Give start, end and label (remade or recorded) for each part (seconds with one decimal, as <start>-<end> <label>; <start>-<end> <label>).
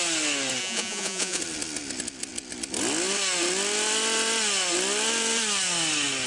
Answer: 0.0-0.6 recorded; 0.6-1.4 remade; 1.4-6.3 recorded